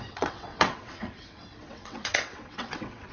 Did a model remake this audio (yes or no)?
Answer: yes